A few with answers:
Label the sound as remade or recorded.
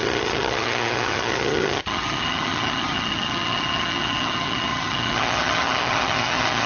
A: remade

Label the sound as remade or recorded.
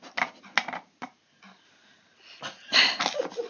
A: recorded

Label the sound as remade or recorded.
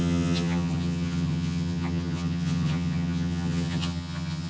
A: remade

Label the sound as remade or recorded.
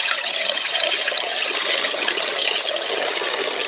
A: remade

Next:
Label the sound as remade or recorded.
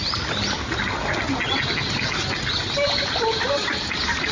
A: recorded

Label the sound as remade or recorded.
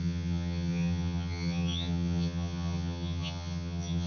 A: remade